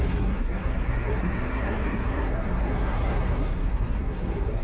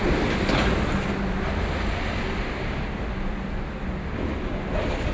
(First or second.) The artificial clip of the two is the first